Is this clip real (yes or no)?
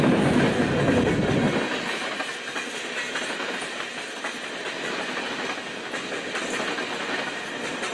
yes